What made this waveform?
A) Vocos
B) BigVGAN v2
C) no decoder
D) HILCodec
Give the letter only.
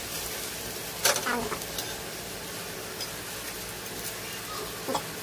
C